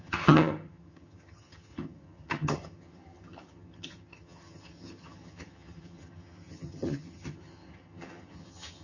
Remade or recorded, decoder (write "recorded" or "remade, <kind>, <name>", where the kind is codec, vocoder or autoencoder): remade, vocoder, HiFi-GAN